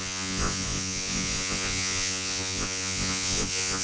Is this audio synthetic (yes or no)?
yes